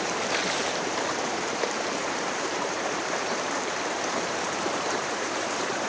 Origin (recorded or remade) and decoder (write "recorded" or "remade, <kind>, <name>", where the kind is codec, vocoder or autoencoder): remade, vocoder, BigVGAN v2